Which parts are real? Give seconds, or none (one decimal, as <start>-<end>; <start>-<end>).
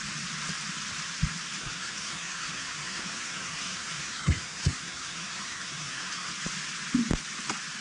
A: 0.0-1.6; 6.3-7.8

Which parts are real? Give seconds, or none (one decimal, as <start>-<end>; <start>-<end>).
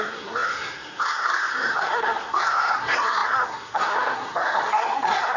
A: none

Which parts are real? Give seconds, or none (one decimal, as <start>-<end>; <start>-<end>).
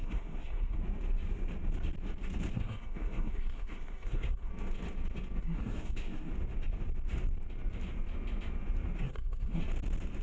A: 0.8-2.5; 4.5-5.4; 6.3-9.0; 9.6-10.2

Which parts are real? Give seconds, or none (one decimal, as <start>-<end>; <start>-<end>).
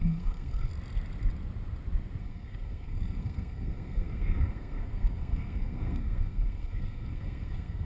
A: 0.7-2.2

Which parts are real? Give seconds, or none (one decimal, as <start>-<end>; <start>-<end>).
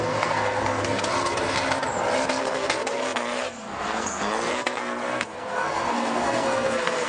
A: 1.1-2.4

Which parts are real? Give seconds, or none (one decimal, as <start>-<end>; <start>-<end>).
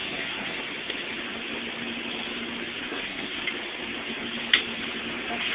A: 0.6-2.8; 3.4-5.5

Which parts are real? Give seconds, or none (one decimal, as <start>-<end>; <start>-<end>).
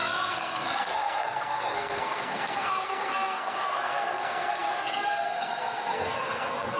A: none